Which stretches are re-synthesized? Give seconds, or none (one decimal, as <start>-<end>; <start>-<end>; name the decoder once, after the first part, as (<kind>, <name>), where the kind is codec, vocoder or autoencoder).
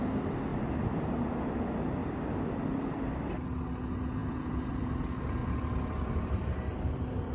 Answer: 0.5-1.0 (vocoder, BigVGAN v2); 2.0-3.3; 4.2-4.7; 5.4-7.3